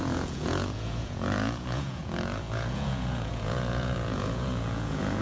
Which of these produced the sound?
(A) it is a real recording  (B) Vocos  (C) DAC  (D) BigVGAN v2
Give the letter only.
B